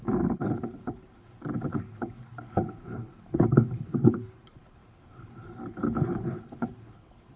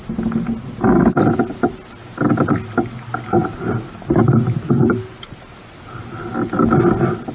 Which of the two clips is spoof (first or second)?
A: first